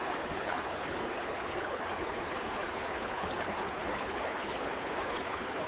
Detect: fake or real fake